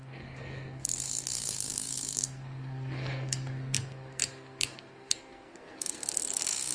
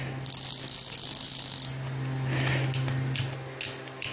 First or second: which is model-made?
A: first